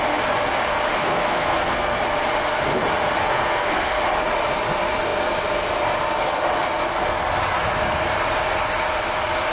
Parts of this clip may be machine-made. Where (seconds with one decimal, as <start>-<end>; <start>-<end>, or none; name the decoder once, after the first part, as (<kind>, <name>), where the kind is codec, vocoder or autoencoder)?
1.0-2.0 (codec, SNAC); 3.2-4.0